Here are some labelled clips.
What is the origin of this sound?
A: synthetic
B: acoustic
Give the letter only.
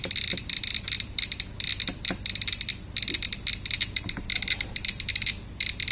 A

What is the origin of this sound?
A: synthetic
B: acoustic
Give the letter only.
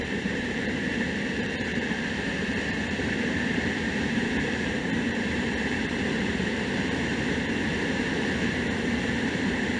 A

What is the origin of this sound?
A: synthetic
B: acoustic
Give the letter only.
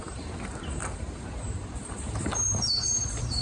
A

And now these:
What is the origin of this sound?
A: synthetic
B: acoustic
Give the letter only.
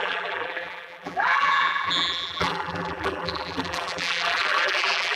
A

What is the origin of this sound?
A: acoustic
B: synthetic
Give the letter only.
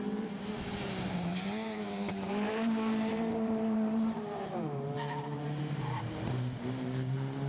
B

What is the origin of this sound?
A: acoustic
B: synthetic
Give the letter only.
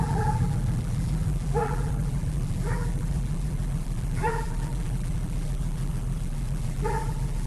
B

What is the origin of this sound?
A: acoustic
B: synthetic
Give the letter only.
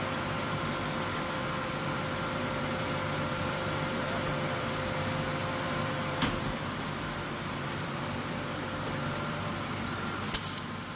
B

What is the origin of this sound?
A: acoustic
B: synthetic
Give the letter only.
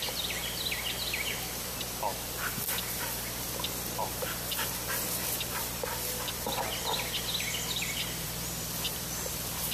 B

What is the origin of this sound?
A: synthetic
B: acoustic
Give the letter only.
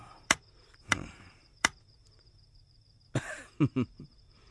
A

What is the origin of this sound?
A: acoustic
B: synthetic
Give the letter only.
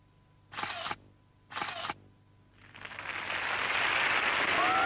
A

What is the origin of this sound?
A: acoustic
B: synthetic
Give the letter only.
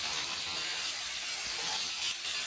A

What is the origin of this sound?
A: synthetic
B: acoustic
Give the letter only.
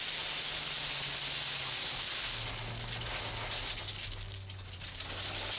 B